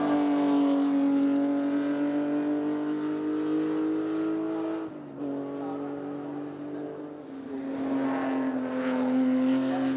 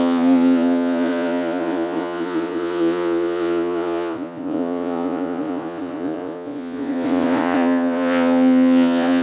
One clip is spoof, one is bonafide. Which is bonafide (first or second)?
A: first